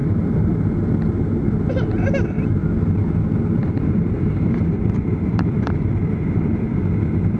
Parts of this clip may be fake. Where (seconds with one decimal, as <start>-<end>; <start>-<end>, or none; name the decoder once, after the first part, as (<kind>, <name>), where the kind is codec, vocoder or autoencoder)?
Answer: 0.0-0.5 (vocoder, BigVGAN v2); 3.6-6.8